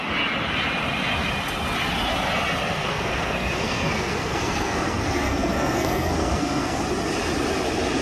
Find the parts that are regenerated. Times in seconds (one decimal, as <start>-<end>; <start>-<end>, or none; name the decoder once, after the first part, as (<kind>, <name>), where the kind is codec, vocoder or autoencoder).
2.7-6.8 (codec, SNAC)